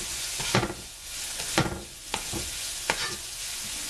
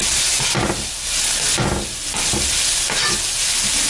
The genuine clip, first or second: second